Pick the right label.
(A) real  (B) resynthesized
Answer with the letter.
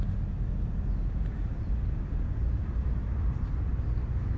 A